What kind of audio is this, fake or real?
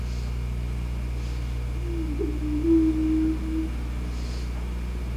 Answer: real